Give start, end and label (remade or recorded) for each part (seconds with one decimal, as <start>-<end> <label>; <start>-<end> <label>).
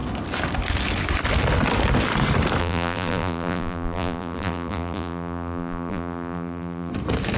0.0-2.6 recorded; 2.6-6.9 remade; 6.9-7.4 recorded